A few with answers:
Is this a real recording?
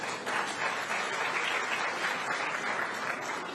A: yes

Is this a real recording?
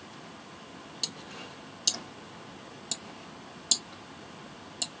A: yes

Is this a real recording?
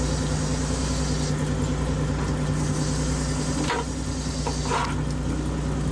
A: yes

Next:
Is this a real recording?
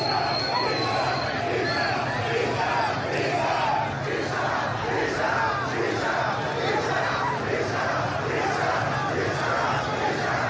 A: yes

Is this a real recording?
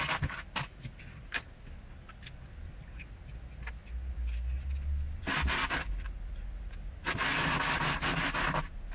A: yes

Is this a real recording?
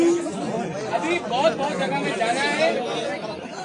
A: yes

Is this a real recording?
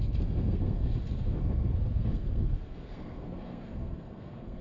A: no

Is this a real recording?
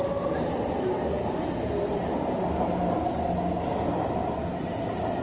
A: yes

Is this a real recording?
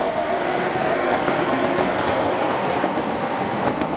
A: no